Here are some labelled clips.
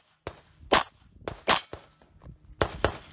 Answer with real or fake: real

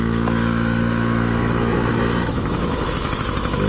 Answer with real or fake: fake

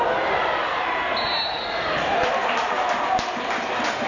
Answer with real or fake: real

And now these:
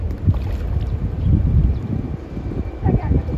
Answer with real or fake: real